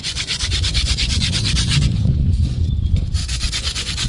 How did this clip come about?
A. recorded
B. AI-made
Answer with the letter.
B